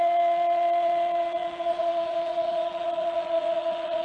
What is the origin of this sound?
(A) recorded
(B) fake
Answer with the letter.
B